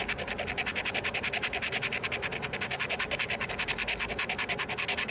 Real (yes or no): yes